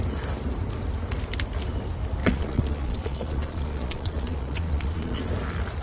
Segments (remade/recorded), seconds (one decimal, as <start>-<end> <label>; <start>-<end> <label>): 0.0-2.2 recorded; 2.2-5.3 remade; 5.3-5.8 recorded